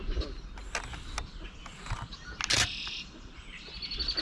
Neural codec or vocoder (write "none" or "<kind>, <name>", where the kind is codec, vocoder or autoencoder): none